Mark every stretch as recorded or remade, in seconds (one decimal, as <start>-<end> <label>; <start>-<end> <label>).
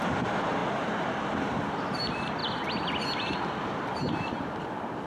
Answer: 0.0-2.4 remade; 2.4-3.6 recorded; 3.6-5.1 remade